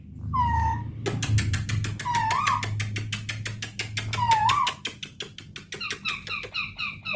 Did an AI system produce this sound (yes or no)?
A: no